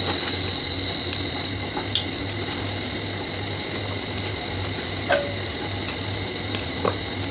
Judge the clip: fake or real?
fake